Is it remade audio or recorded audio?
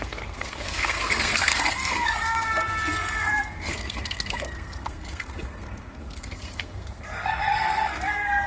remade